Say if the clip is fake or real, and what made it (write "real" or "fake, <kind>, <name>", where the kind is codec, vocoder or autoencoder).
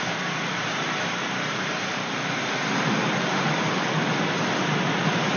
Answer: fake, vocoder, BigVGAN v2